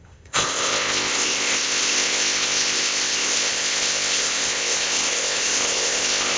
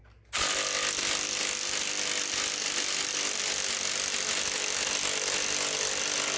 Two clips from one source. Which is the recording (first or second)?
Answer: second